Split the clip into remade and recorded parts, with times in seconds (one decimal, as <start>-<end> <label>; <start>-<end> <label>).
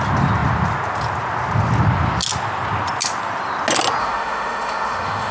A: 0.0-4.0 recorded; 4.0-5.3 remade